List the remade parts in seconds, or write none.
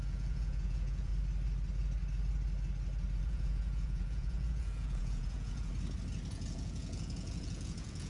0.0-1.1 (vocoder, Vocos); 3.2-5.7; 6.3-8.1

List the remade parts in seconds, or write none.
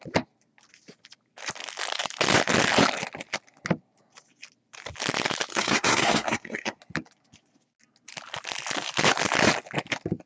5.5-6.8 (codec, SNAC)